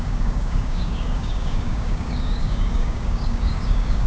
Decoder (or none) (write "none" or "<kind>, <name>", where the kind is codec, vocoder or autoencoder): codec, DAC